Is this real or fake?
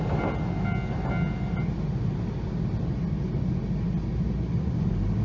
real